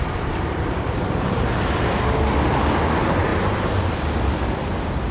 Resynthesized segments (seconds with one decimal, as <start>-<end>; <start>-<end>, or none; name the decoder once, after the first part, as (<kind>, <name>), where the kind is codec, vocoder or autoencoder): 0.0-3.3 (vocoder, BigVGAN v2); 3.9-5.1